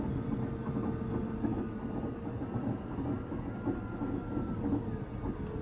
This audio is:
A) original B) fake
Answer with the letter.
A